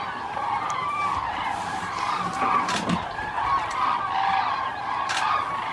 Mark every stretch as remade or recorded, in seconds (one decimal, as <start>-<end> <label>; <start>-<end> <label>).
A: 0.0-5.7 recorded